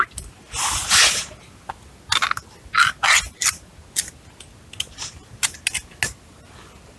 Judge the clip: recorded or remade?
recorded